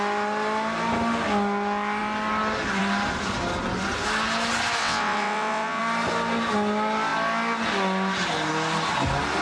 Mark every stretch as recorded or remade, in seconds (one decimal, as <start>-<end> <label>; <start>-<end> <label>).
0.0-4.8 recorded; 4.8-5.8 remade; 5.8-9.4 recorded